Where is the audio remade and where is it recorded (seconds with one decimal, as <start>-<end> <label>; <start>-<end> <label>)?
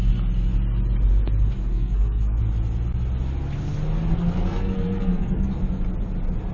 0.0-1.7 recorded; 1.7-2.4 remade; 2.4-4.1 recorded; 4.1-5.5 remade; 5.5-6.5 recorded